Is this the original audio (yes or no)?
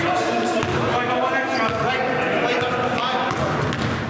yes